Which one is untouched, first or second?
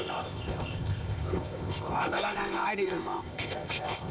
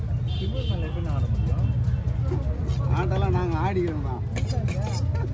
second